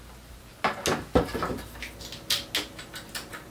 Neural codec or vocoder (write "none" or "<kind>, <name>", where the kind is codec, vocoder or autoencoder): none